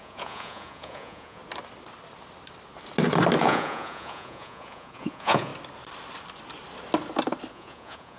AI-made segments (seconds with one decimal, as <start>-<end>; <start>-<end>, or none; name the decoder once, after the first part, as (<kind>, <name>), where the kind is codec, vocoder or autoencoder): 0.0-1.4 (vocoder, Vocos); 3.4-5.5; 7.5-8.2